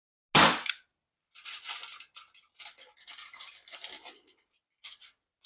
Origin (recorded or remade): recorded